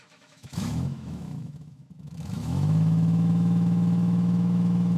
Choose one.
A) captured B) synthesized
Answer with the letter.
B